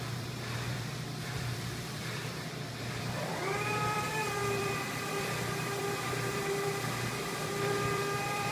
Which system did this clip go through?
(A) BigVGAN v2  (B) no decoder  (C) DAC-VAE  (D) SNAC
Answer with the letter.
A